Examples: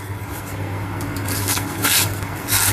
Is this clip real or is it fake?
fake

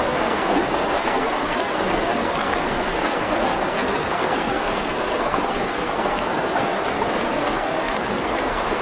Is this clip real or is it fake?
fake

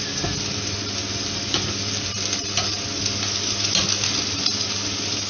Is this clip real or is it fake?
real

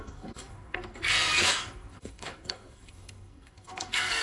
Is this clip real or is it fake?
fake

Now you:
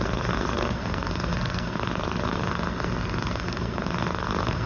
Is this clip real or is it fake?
fake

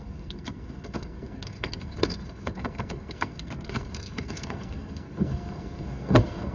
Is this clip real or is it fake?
fake